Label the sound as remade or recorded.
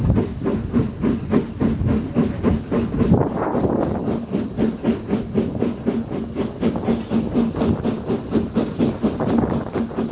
recorded